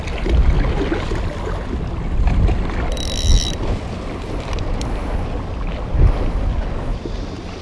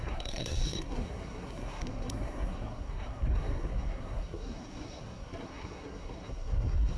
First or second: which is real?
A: first